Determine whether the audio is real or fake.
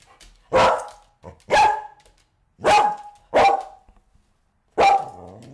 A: real